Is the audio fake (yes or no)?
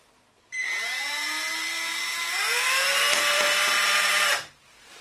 yes